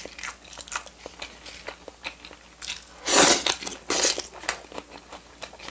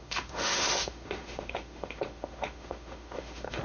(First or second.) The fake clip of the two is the second